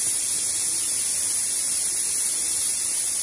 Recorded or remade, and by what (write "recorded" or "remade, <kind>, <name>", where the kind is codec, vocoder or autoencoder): recorded